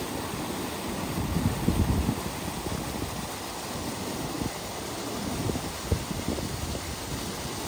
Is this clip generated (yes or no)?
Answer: no